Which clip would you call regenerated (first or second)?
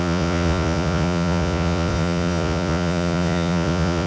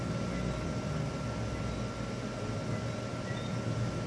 first